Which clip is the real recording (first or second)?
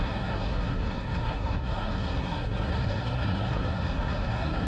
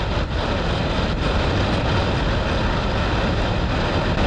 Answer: second